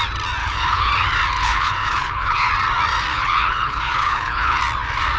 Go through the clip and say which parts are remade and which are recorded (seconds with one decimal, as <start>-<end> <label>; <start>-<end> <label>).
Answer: 0.0-0.4 recorded; 0.4-0.9 remade; 0.9-1.4 recorded; 1.4-2.5 remade; 2.5-3.1 recorded; 3.1-4.6 remade; 4.6-5.2 recorded